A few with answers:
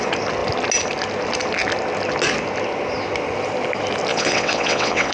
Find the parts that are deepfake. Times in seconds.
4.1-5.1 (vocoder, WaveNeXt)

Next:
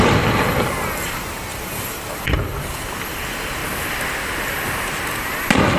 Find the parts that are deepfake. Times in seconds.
0.0-3.6 (vocoder, BigVGAN v2)